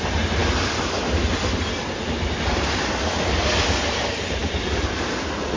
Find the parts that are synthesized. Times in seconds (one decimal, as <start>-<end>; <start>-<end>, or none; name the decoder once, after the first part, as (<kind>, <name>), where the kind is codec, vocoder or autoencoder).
none